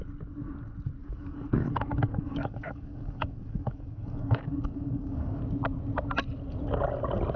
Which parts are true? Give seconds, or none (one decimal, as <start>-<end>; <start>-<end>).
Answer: 0.0-1.0; 5.4-7.4

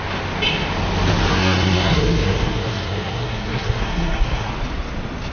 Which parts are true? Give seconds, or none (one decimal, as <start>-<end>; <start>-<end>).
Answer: 0.0-1.3; 4.5-5.3

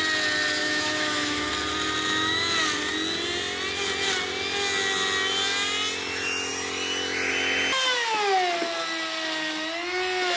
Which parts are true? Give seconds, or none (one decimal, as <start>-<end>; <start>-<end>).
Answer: 0.0-0.6; 1.5-10.4